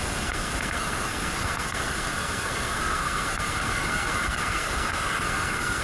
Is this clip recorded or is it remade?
remade